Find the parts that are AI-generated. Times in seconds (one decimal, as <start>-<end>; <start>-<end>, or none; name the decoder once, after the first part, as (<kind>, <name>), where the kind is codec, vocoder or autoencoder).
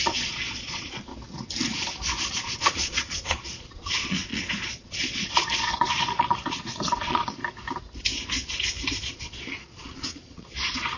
0.0-1.1 (vocoder, Vocos); 2.3-7.4; 9.0-11.0